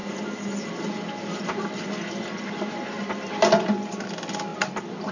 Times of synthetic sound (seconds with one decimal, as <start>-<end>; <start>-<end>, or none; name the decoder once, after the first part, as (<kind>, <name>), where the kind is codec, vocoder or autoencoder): none